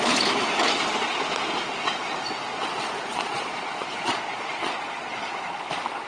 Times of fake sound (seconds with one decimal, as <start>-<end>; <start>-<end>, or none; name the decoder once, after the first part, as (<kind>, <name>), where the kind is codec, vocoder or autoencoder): 2.5-6.1 (vocoder, Vocos)